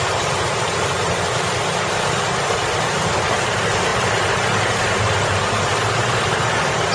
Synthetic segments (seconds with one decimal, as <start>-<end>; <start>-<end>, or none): none